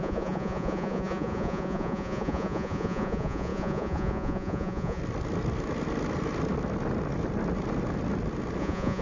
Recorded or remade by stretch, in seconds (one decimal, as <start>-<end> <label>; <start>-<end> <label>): 0.0-5.0 remade; 5.0-8.6 recorded; 8.6-9.0 remade